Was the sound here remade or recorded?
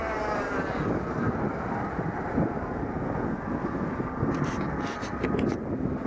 recorded